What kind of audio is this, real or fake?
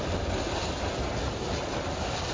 real